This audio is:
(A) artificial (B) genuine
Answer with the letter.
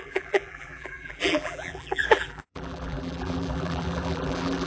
A